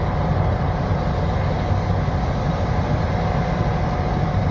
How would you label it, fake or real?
real